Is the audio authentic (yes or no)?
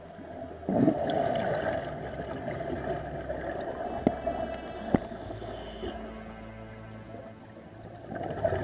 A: yes